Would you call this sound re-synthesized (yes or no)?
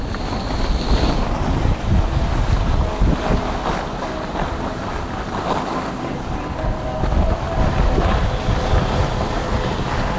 no